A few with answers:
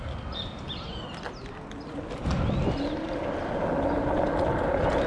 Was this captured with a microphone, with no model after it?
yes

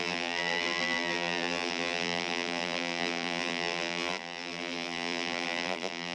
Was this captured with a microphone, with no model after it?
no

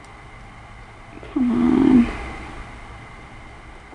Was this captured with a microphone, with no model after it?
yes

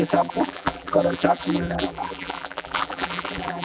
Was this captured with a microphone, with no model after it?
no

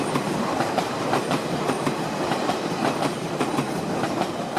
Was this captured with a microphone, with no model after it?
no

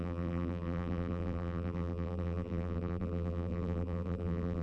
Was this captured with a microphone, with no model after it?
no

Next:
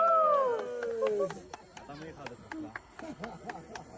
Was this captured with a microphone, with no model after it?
yes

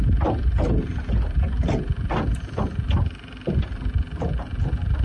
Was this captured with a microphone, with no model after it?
yes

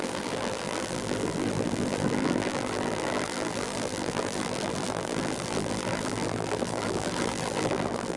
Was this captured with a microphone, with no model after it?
no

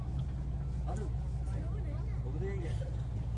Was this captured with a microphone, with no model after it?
yes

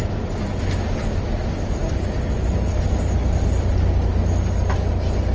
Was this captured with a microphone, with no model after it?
yes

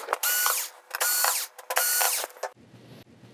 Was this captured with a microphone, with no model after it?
yes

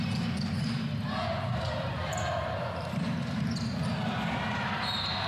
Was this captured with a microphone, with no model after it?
no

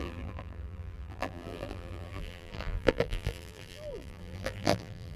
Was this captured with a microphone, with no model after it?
no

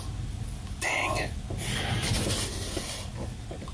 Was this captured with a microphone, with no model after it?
yes